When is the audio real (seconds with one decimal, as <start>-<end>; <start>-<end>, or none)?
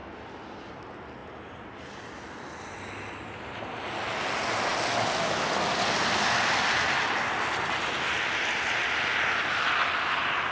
0.0-10.5